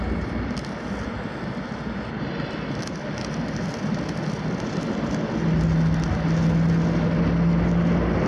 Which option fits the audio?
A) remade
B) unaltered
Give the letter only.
B